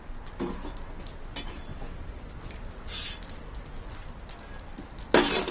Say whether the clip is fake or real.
real